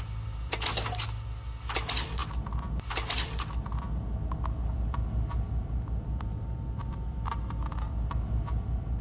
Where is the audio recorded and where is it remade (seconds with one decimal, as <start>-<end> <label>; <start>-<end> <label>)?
0.0-9.0 recorded